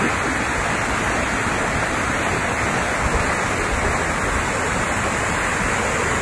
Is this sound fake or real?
real